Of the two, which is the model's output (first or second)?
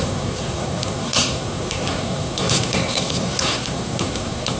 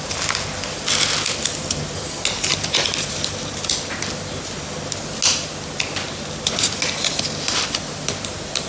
first